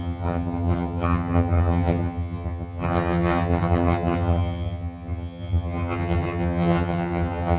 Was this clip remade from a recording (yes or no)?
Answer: yes